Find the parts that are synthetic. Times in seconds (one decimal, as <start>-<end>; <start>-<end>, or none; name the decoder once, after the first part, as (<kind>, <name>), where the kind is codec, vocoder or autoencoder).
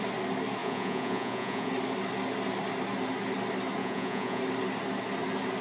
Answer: 0.6-1.7 (vocoder, Vocos); 3.8-4.4